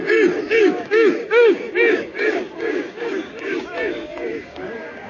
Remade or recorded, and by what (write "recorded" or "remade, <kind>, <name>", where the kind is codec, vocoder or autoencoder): remade, codec, DAC